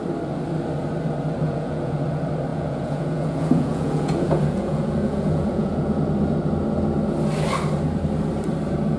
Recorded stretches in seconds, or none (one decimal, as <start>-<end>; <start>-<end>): 0.0-1.4; 2.0-2.5; 6.1-9.0